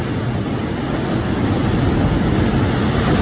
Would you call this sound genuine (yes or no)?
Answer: yes